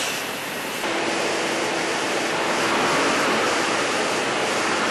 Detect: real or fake real